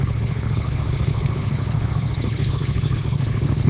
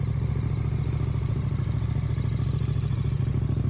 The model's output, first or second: first